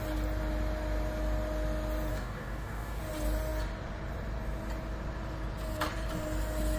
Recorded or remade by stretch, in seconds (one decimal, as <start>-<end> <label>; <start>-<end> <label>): 0.0-2.1 recorded; 2.1-3.0 remade; 3.0-6.8 recorded